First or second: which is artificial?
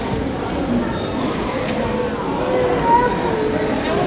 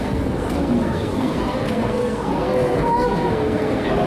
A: second